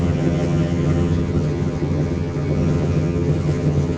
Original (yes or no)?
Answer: no